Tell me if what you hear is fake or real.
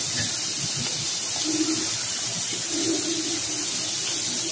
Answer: real